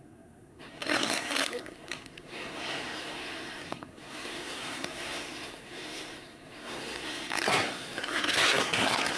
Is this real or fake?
fake